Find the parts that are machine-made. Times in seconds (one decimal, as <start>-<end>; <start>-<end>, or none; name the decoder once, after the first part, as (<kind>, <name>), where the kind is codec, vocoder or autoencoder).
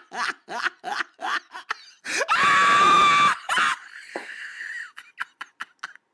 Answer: 4.1-4.6 (codec, SNAC)